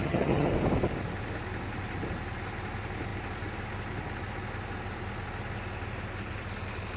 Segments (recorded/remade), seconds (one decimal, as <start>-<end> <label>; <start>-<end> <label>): 0.0-0.5 remade; 0.5-7.0 recorded